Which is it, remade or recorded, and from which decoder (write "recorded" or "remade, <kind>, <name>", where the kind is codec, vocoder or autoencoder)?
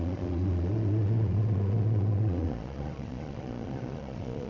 remade, vocoder, Vocos